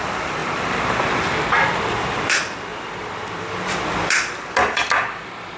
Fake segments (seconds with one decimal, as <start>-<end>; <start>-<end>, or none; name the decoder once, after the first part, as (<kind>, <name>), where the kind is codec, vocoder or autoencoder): none